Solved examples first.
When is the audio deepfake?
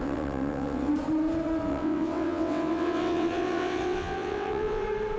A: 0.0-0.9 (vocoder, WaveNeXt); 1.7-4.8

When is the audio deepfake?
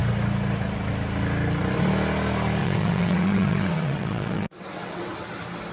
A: 2.6-5.0 (vocoder, WaveNeXt)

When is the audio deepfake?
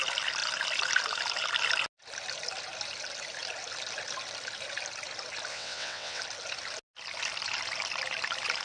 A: 5.5-6.2 (vocoder, WaveNeXt)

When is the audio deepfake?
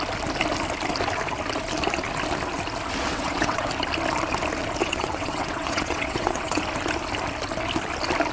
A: 3.1-3.7 (vocoder, WaveNeXt); 4.8-6.6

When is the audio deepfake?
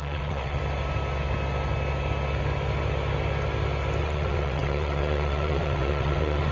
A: 0.0-0.6 (vocoder, WaveNeXt); 4.0-6.5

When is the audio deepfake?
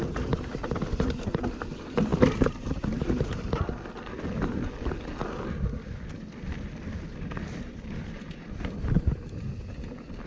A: none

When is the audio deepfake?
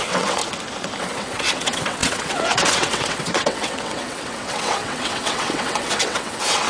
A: 0.0-0.4 (vocoder, WaveNeXt); 1.0-6.7